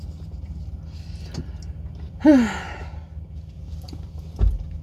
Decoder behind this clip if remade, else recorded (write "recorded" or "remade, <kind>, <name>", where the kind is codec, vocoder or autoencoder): recorded